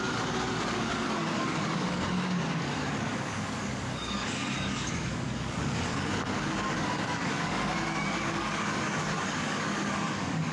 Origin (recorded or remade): remade